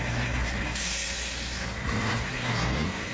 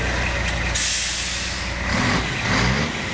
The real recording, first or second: second